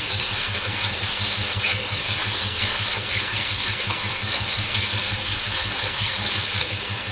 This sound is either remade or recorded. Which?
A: remade